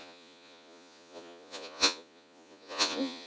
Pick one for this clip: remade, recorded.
remade